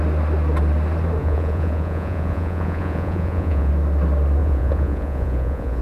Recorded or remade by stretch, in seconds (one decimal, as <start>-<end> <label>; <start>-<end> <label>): 0.0-1.2 recorded; 1.2-3.7 remade; 3.7-4.4 recorded; 4.4-5.8 remade